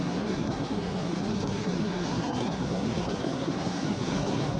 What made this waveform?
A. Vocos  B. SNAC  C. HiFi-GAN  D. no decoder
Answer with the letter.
B